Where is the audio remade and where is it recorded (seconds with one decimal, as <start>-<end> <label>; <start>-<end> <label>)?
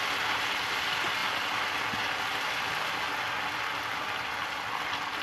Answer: 0.0-5.2 recorded